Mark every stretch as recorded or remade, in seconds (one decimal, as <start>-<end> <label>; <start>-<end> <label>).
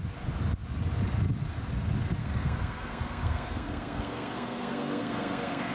0.0-2.2 recorded; 2.2-5.7 remade